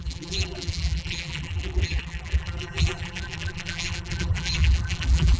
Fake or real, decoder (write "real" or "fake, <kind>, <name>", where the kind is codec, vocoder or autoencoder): fake, vocoder, BigVGAN v2